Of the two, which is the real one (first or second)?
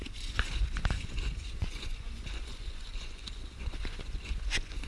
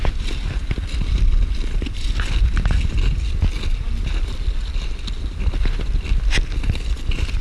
second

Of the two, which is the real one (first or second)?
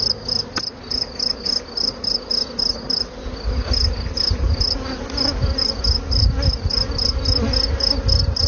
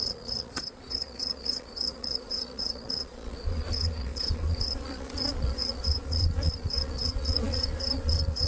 first